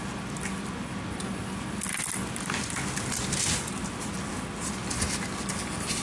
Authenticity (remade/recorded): recorded